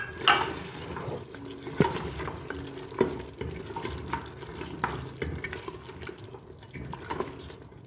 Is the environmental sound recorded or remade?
recorded